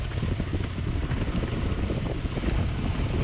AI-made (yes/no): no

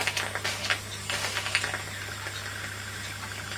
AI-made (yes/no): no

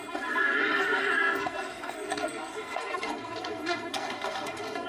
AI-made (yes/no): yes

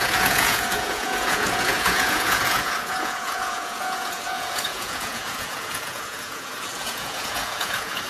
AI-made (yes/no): yes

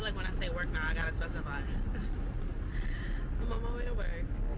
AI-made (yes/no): no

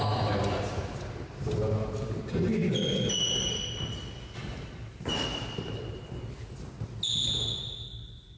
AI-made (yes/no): no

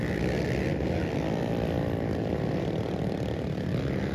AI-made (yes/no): no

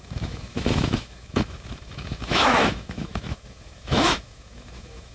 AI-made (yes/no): yes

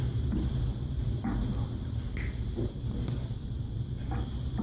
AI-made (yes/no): no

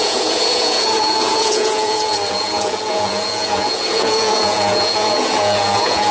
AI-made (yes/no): yes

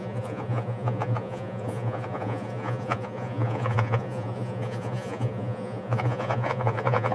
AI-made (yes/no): yes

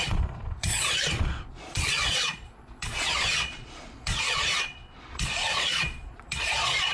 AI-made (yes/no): yes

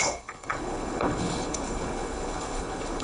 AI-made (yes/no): yes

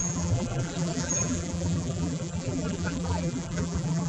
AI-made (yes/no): yes